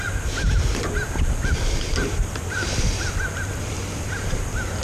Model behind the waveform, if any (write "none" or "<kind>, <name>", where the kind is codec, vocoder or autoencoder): vocoder, BigVGAN v2